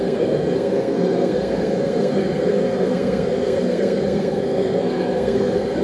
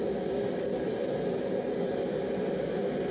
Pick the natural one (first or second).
second